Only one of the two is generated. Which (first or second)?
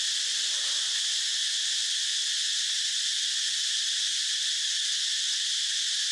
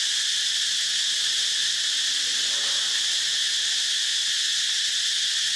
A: first